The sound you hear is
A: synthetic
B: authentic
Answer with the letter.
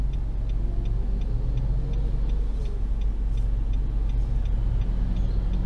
B